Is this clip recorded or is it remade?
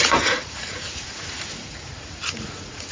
remade